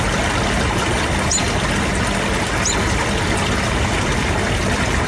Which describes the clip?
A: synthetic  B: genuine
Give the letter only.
B